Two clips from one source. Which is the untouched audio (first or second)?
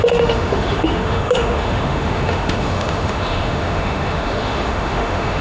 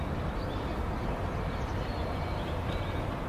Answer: second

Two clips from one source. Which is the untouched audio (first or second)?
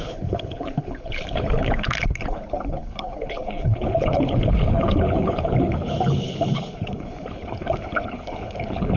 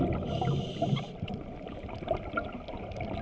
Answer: second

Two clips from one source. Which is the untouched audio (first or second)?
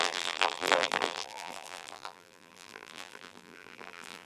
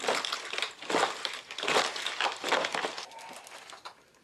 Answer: second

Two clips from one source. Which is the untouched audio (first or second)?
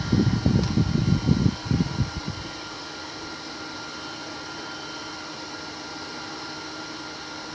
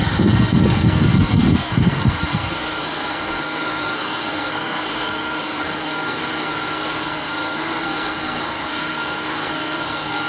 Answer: first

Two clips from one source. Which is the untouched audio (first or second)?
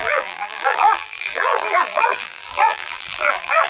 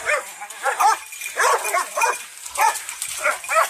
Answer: second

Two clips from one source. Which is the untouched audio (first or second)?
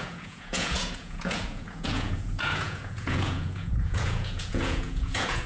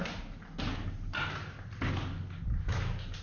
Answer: second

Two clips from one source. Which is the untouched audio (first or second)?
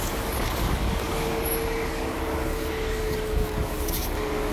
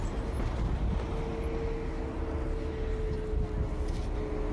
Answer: second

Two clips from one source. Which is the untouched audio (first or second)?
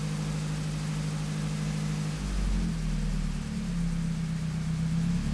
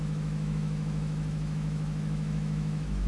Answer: first